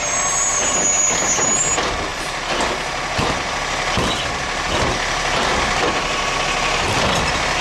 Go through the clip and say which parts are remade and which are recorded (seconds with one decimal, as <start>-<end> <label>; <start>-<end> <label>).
0.0-7.6 recorded